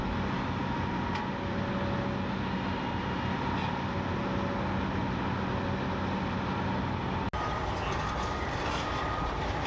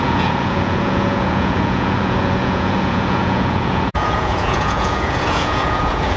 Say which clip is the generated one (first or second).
second